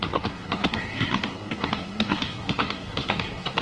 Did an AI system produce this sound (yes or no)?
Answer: yes